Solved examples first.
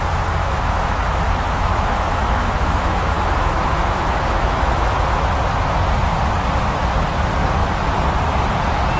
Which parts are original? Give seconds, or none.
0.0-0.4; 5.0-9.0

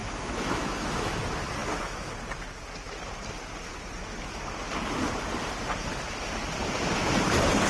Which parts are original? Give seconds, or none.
1.2-1.6; 2.1-7.7

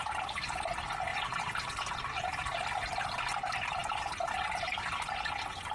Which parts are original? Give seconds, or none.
0.0-5.7

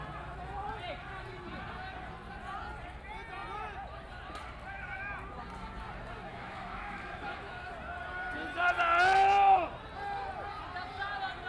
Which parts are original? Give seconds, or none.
0.0-6.3; 7.7-11.5

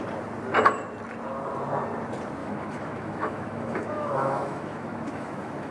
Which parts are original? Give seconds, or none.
0.0-2.4

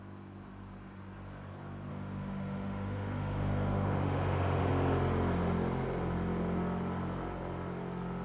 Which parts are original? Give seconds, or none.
0.0-1.9; 4.7-8.2

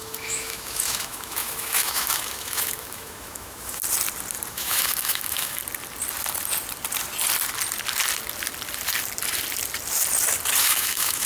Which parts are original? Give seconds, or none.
3.8-4.5; 5.6-10.6

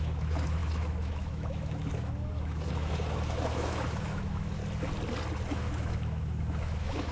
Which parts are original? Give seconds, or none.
4.6-5.5